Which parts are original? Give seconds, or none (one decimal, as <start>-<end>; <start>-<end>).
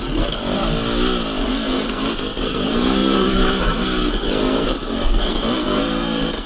0.4-1.4